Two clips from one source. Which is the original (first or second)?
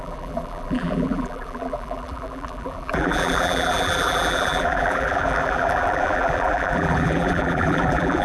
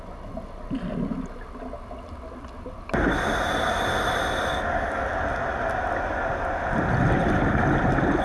second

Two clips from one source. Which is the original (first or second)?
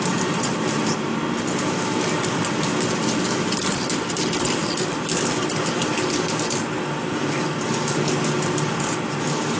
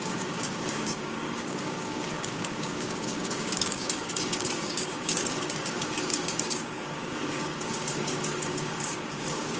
first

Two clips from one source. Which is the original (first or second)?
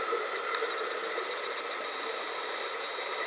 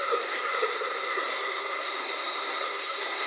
first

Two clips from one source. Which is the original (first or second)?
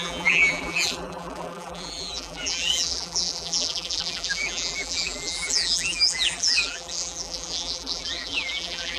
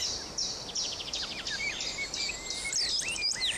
second